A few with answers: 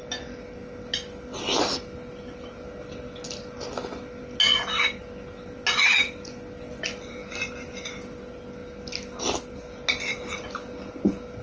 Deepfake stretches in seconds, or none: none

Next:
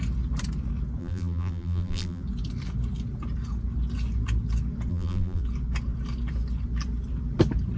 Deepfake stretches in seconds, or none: 1.0-2.2 (vocoder, BigVGAN v2); 4.9-5.4

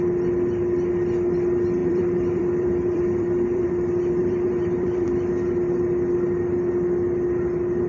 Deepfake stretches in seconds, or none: 1.8-3.7 (vocoder, BigVGAN v2); 4.2-5.3

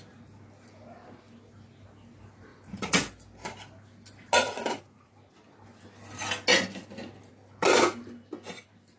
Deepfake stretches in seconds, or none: 2.5-3.1 (vocoder, Vocos); 4.4-5.1